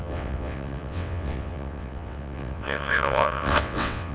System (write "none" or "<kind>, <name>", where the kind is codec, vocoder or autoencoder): vocoder, WaveNeXt